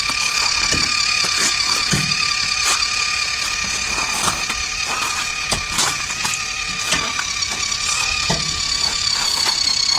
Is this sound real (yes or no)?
yes